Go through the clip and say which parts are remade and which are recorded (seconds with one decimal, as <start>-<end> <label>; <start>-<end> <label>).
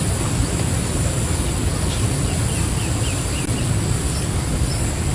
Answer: 0.0-5.1 recorded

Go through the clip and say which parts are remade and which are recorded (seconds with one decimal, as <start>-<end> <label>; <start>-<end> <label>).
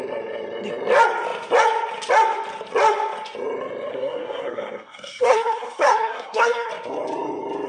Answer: 0.0-3.9 recorded; 3.9-6.7 remade; 6.7-7.7 recorded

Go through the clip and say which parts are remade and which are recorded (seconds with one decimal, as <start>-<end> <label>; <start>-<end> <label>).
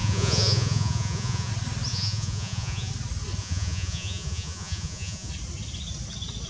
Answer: 0.0-1.5 remade; 1.5-1.9 recorded; 1.9-2.9 remade; 2.9-3.4 recorded; 3.4-5.3 remade; 5.3-6.5 recorded